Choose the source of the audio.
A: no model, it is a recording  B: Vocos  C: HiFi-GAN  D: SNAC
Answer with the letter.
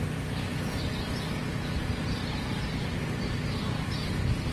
A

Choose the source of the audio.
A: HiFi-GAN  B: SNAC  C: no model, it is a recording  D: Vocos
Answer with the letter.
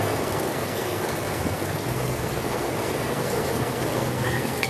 B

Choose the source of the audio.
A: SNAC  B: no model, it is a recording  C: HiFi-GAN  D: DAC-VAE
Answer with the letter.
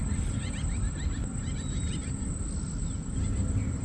B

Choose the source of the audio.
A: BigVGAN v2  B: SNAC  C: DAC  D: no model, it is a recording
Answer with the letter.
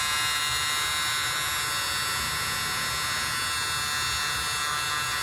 D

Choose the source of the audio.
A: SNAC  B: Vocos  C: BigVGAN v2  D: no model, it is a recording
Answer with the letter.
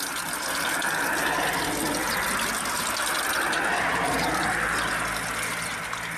D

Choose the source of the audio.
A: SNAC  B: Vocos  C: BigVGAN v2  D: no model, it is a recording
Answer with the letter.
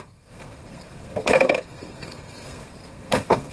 A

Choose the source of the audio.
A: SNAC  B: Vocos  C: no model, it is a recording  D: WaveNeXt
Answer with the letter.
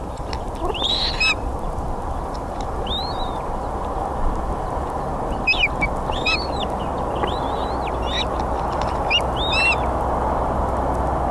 C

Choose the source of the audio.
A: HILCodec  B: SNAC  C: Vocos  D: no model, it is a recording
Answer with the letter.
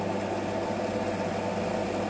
D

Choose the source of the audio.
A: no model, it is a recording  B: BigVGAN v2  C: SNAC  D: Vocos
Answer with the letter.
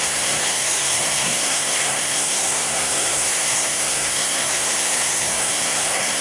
C